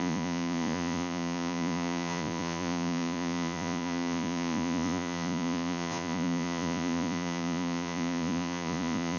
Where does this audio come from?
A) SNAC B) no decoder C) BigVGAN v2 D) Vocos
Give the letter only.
D